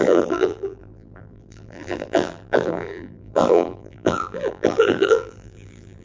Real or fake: fake